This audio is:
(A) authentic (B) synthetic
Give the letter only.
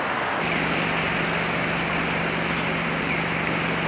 A